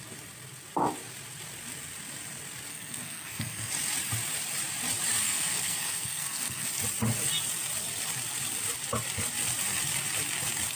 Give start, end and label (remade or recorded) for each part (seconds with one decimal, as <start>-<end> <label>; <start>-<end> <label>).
0.0-2.7 recorded; 2.7-3.7 remade; 3.7-5.2 recorded; 5.2-6.7 remade; 6.7-10.8 recorded